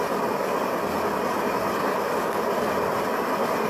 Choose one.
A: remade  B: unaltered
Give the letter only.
B